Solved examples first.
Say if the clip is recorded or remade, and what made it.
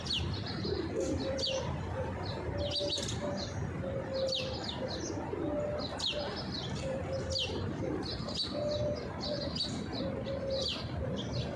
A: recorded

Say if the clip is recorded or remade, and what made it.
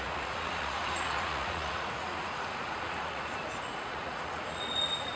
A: remade, vocoder, Vocos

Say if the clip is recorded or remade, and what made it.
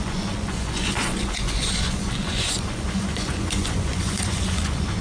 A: remade, vocoder, Vocos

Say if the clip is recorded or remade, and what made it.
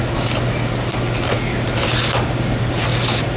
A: recorded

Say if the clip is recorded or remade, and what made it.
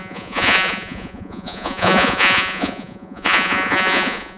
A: remade, vocoder, Vocos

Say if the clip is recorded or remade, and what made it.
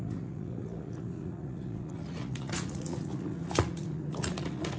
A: remade, vocoder, Vocos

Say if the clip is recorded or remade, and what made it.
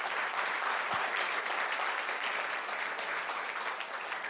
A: recorded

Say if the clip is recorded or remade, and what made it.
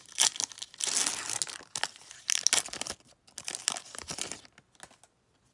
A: recorded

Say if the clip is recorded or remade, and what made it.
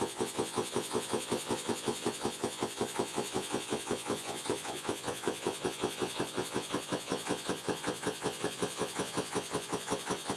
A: remade, vocoder, Vocos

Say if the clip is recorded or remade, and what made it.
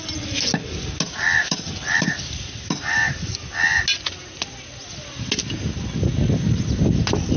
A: recorded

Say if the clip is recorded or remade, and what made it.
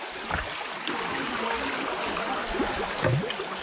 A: recorded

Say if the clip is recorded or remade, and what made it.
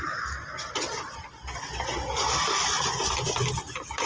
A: recorded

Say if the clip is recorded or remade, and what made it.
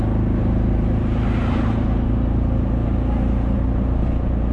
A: recorded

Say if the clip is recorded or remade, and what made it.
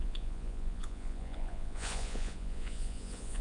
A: remade, vocoder, Vocos